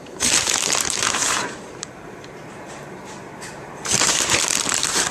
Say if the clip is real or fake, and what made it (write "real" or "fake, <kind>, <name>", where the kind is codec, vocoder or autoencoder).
fake, vocoder, BigVGAN v2